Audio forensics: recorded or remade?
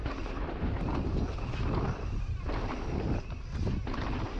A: recorded